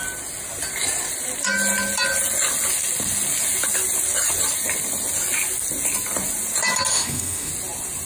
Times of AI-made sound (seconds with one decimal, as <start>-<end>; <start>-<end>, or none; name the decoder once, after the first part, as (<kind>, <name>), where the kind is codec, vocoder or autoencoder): 6.9-7.5 (autoencoder, DAC-VAE)